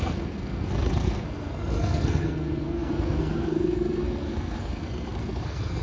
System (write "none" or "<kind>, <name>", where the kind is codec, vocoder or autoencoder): codec, SNAC